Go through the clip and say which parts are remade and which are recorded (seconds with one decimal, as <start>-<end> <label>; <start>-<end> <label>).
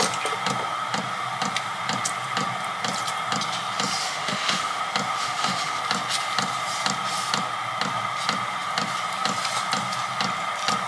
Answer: 0.0-4.0 recorded; 4.0-4.8 remade; 4.8-5.2 recorded; 5.2-5.8 remade; 5.8-10.9 recorded